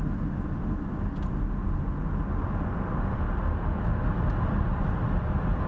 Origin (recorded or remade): recorded